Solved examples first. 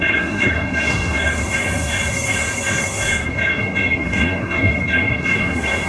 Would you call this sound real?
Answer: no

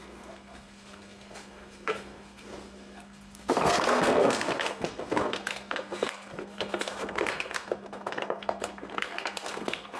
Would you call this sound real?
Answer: no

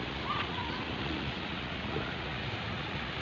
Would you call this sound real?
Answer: no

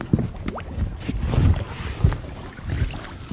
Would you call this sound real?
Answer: yes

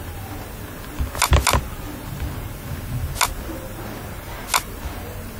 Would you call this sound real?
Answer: yes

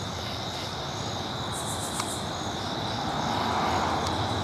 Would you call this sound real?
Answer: yes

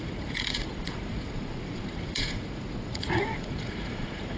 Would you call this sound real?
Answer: no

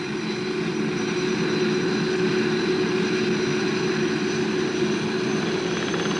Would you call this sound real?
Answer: yes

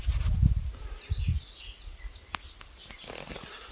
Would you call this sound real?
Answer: yes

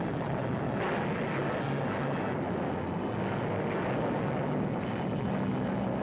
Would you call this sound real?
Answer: yes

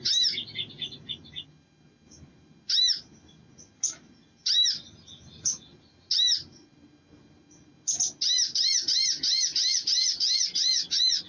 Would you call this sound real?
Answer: yes